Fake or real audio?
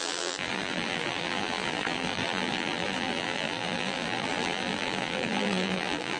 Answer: fake